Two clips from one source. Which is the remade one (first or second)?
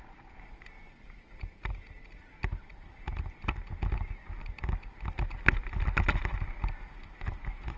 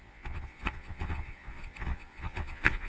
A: second